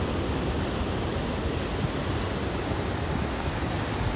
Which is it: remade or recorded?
recorded